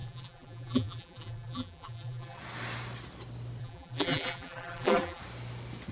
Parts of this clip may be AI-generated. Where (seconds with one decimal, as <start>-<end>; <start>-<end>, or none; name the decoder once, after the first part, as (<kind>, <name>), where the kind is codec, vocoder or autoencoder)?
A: 0.0-2.4 (vocoder, BigVGAN v2); 3.6-5.2